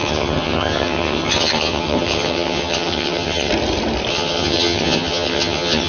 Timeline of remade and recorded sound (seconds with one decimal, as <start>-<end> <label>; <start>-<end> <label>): 0.0-3.5 remade; 3.5-4.1 recorded; 4.1-5.9 remade

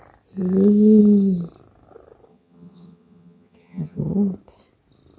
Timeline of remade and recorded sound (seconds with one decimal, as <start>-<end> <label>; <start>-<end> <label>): 0.0-2.3 recorded; 2.3-4.0 remade; 4.0-5.2 recorded